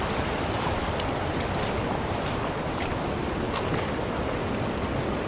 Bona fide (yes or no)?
no